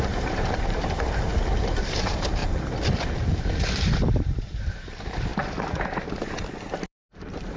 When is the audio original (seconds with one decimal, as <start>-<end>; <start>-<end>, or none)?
1.3-1.8; 2.4-4.0; 5.3-6.7